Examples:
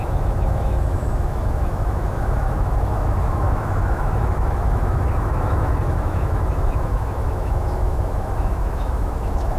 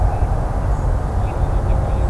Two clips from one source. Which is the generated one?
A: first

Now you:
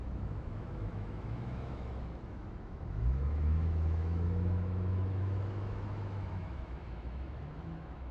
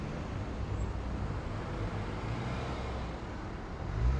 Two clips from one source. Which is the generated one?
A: first